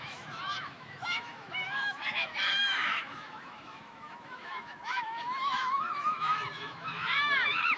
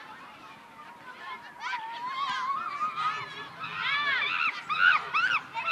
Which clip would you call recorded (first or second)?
second